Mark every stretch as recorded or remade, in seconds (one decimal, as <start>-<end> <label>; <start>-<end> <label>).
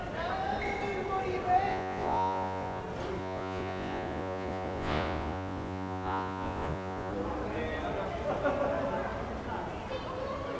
0.0-1.7 recorded; 1.7-2.8 remade; 2.8-3.2 recorded; 3.2-7.1 remade; 7.1-10.6 recorded